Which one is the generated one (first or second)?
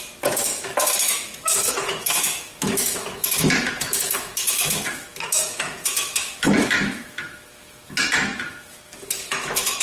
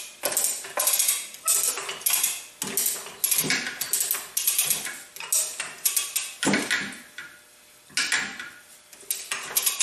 first